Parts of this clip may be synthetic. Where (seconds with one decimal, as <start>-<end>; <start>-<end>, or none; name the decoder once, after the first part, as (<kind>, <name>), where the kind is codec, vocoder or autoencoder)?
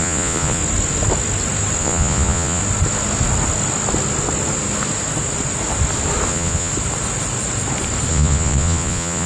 0.0-0.6 (vocoder, Vocos); 1.8-2.6; 6.3-6.7; 8.1-9.3